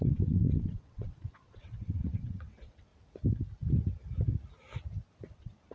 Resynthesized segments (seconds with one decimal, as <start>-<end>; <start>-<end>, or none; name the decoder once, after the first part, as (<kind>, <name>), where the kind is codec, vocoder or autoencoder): 0.0-2.9 (vocoder, WaveNeXt); 5.3-5.7

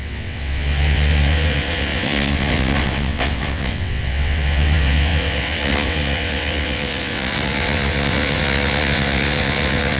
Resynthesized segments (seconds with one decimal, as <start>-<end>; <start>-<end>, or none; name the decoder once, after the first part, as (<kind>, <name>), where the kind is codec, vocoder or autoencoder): 0.0-10.0 (vocoder, WaveNeXt)

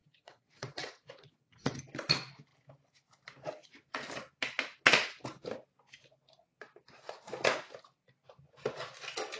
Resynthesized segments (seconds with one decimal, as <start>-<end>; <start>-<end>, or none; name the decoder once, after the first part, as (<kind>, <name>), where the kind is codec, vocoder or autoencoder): 0.0-1.6 (vocoder, WaveNeXt)

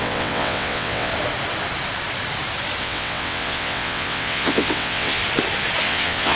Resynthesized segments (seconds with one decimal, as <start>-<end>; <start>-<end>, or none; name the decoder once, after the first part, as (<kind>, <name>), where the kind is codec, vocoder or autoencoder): 0.0-1.1 (vocoder, WaveNeXt); 2.8-5.2; 5.8-6.4

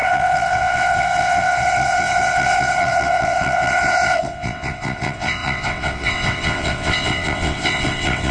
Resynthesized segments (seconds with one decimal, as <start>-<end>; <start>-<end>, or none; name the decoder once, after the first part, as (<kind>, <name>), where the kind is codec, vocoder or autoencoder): 0.0-8.3 (vocoder, WaveNeXt)

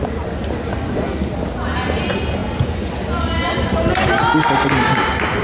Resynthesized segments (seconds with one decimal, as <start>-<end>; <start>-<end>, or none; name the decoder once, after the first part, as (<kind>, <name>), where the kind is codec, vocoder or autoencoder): none

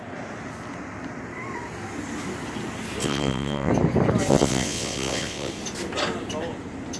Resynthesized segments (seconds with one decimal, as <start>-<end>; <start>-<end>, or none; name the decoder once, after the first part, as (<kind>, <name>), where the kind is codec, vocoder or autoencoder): 3.0-3.7 (vocoder, WaveNeXt); 4.3-5.5